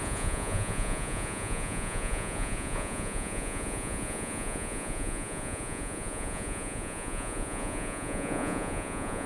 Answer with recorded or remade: remade